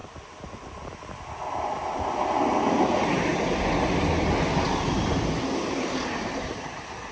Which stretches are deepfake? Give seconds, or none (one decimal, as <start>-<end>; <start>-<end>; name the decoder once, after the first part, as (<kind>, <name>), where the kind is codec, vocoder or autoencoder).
none